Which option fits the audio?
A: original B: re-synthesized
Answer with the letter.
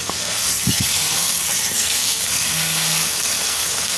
B